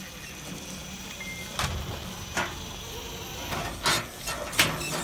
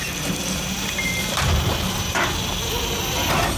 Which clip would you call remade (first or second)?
second